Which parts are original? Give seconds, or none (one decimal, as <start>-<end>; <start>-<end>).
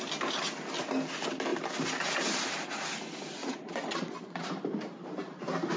0.0-3.4; 4.4-5.8